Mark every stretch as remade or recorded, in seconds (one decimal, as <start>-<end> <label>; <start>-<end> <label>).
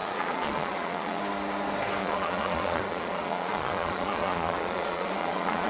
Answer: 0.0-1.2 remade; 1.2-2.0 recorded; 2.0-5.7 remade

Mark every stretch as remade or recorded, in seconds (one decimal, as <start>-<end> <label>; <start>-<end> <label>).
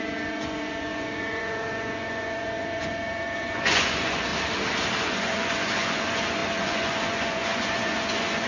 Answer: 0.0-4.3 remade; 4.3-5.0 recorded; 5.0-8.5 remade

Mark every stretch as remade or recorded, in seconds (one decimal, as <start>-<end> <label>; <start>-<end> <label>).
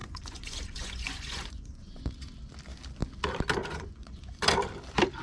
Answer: 0.0-2.1 remade; 2.1-3.6 recorded; 3.6-4.3 remade; 4.3-5.2 recorded